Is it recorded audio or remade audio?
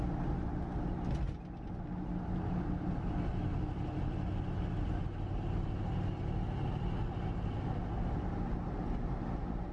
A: recorded